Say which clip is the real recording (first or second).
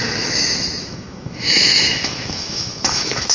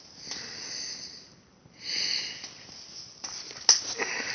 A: second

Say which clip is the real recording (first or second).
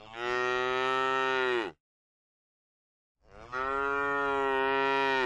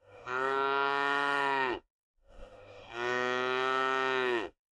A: first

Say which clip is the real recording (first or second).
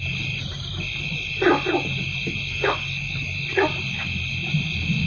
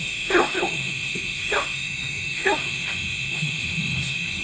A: first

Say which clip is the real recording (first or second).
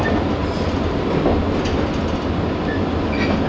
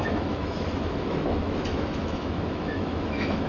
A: first